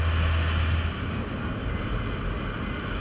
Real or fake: real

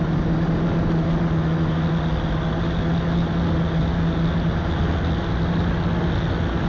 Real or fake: real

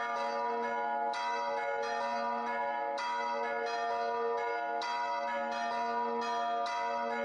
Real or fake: real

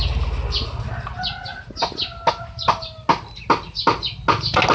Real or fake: real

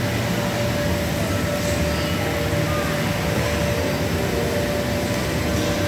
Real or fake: real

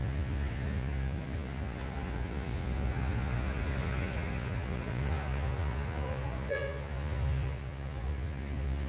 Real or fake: fake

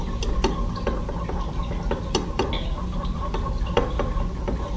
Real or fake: real